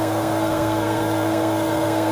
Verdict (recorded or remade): remade